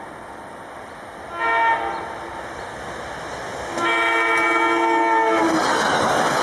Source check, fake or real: real